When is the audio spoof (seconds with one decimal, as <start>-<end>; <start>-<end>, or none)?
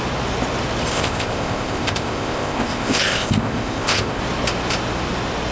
0.9-4.2